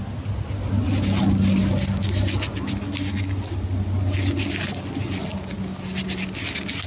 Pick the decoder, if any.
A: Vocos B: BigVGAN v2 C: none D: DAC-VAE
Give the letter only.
C